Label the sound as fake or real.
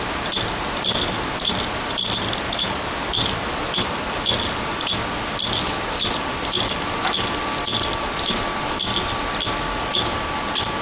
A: real